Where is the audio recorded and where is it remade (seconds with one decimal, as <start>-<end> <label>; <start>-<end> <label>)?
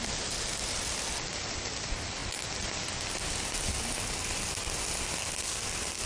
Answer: 0.0-6.1 recorded